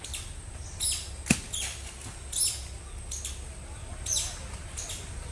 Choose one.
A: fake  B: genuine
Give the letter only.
B